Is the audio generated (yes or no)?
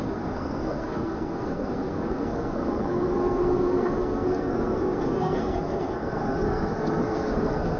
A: yes